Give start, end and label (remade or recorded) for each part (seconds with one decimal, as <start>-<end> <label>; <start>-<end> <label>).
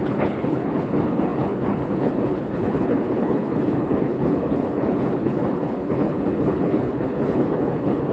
0.0-8.1 remade